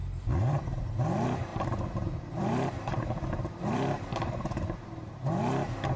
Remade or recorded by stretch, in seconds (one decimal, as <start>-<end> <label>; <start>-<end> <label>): 0.0-0.8 remade; 0.8-1.5 recorded; 1.5-5.1 remade; 5.1-6.0 recorded

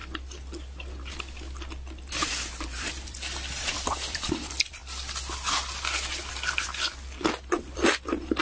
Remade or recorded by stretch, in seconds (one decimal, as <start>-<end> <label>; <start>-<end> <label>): 0.0-2.1 recorded; 2.1-4.8 remade; 4.8-6.3 recorded; 6.3-8.4 remade